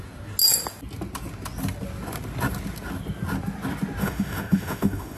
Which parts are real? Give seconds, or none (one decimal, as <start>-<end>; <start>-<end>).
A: 0.0-4.0